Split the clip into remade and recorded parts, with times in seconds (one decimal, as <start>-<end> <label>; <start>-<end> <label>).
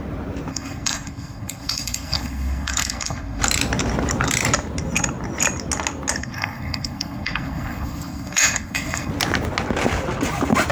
0.0-0.5 recorded; 0.5-3.4 remade; 3.4-6.2 recorded; 6.2-9.1 remade; 9.1-10.7 recorded